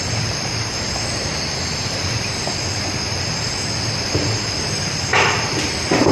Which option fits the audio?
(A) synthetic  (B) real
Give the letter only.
A